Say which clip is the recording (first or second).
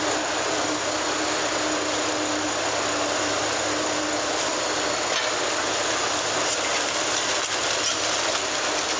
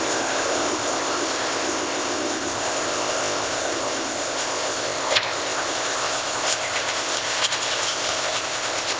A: first